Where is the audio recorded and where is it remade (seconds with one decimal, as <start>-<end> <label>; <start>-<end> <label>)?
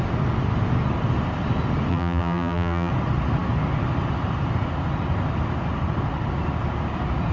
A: 0.0-1.9 recorded; 1.9-2.9 remade; 2.9-7.3 recorded